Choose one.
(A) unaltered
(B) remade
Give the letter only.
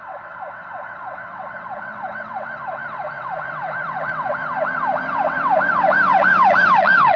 B